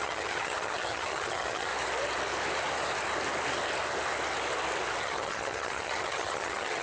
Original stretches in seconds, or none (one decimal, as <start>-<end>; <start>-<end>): 1.7-5.0